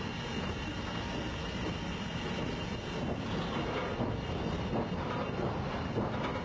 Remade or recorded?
recorded